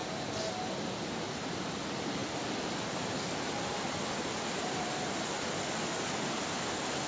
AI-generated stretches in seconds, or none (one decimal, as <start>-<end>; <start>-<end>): none